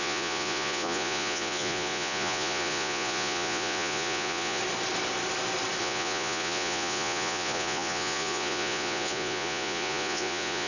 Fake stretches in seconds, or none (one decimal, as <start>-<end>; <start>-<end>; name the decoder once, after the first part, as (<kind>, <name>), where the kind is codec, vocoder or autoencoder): 0.0-4.6 (vocoder, Vocos); 5.8-10.7